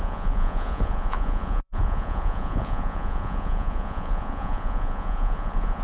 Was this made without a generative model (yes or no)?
no